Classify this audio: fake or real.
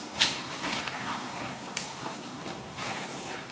fake